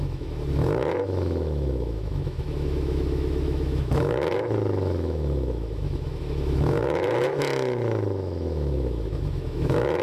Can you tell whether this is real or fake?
fake